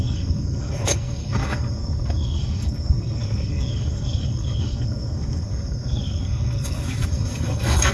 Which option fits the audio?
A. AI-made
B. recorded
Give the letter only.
A